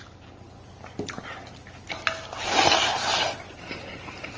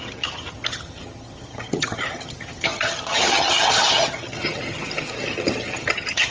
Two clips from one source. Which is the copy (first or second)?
second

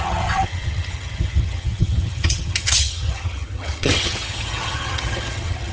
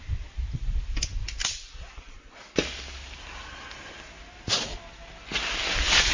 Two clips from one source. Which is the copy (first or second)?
first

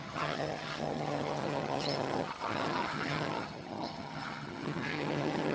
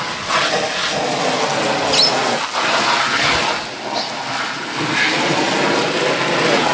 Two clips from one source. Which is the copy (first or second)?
first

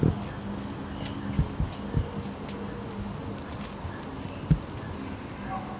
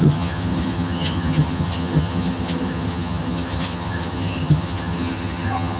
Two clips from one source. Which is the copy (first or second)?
second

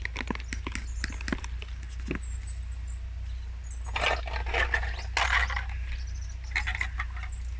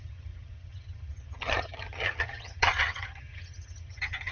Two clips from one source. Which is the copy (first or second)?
second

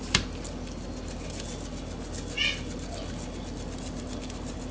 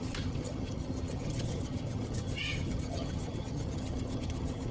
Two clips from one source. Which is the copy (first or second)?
second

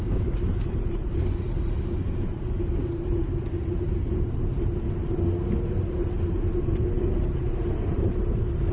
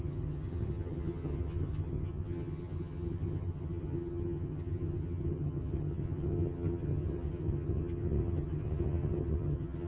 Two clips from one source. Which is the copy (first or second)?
second